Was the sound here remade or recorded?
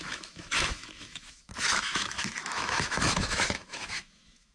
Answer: remade